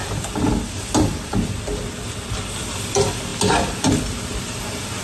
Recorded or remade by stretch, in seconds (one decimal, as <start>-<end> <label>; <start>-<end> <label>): 0.0-5.0 recorded